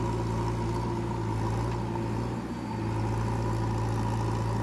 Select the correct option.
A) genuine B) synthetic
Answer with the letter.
A